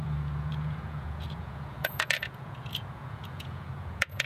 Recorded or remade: remade